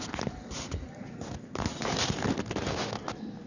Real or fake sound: real